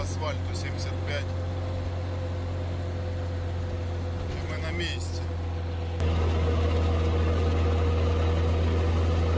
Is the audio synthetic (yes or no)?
no